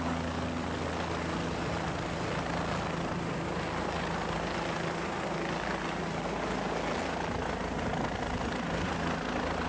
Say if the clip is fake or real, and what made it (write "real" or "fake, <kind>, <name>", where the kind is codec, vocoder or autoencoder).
real